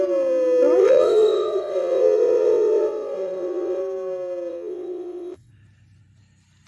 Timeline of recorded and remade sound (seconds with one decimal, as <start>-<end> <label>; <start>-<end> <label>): 0.0-0.8 recorded; 0.8-3.8 remade; 3.8-4.5 recorded; 4.5-5.5 remade; 5.5-6.7 recorded

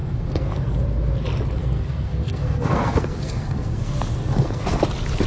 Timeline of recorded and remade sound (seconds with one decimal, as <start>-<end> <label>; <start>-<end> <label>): 0.0-0.8 remade; 0.8-1.6 recorded; 1.6-4.8 remade; 4.8-5.3 recorded

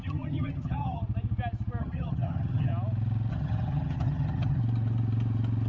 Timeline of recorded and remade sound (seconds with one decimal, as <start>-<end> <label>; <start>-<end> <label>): 0.0-1.0 remade; 1.0-1.8 recorded; 1.8-2.7 remade; 2.7-3.3 recorded; 3.3-4.6 remade; 4.6-5.7 recorded

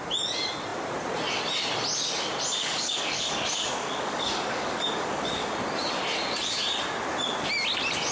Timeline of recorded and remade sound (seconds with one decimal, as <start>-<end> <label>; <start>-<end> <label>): 0.0-2.6 recorded; 2.6-5.5 remade; 5.5-8.1 recorded

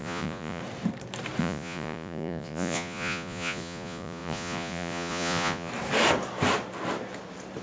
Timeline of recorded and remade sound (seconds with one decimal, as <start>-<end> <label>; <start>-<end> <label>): 0.0-0.6 remade; 0.6-1.4 recorded; 1.4-5.7 remade; 5.7-7.6 recorded